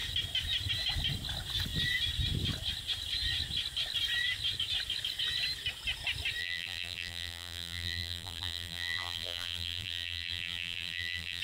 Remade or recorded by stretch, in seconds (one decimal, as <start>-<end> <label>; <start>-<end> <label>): 0.0-6.4 recorded; 6.4-11.4 remade